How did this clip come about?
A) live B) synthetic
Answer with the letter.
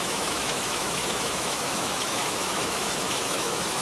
B